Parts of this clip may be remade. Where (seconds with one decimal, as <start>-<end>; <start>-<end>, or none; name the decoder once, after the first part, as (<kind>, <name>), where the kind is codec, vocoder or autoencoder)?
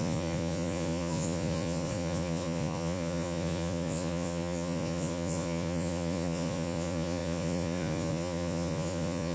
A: 0.0-9.3 (vocoder, Vocos)